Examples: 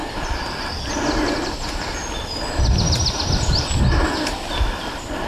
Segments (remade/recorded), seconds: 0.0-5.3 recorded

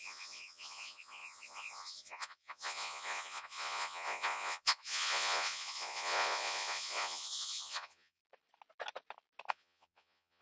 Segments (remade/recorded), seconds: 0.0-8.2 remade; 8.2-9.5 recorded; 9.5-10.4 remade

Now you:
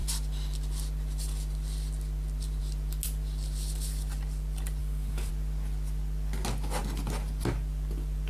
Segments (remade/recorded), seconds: 0.0-4.8 recorded; 4.8-5.3 remade; 5.3-8.3 recorded